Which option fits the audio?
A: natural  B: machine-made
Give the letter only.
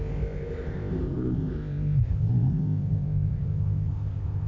B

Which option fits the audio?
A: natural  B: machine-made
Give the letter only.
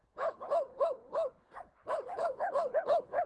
B